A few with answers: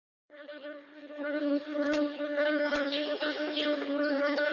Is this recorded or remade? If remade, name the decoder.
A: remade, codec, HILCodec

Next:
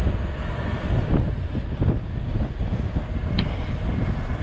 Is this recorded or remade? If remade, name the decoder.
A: recorded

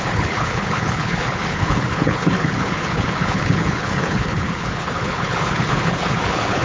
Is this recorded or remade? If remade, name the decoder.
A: remade, codec, HILCodec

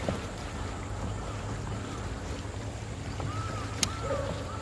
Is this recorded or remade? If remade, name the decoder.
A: recorded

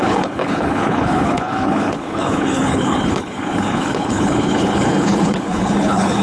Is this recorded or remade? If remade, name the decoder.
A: remade, codec, HILCodec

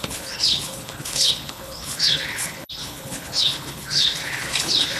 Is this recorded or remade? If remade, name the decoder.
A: remade, codec, HILCodec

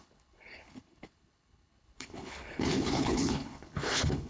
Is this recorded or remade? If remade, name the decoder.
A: remade, codec, HILCodec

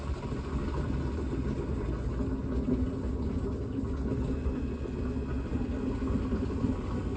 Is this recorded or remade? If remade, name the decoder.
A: recorded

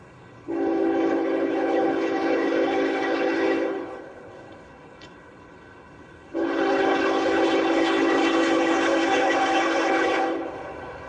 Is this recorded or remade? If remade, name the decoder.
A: remade, codec, HILCodec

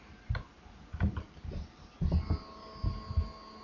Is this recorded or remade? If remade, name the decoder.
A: recorded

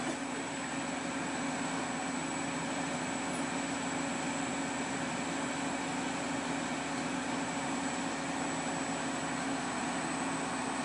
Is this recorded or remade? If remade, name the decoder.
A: recorded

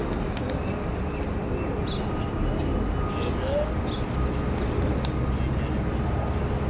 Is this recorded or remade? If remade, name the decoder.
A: recorded